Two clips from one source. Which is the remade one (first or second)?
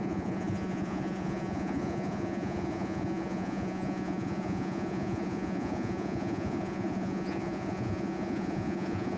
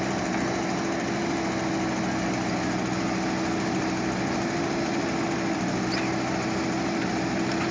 first